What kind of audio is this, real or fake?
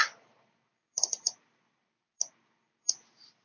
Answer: real